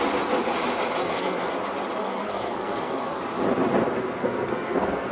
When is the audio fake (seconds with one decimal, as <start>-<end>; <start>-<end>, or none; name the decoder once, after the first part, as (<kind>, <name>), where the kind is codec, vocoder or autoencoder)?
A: 1.0-1.5 (codec, SNAC); 2.0-3.2; 4.2-5.1